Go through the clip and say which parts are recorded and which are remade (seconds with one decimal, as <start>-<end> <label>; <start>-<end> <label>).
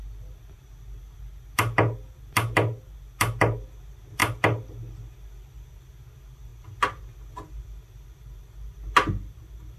0.0-9.8 recorded